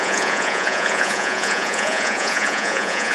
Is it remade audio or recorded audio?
remade